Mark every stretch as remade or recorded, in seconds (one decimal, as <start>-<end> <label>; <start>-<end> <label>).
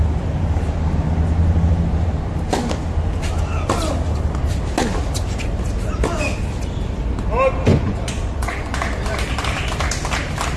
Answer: 0.0-7.7 recorded; 7.7-8.8 remade; 8.8-10.6 recorded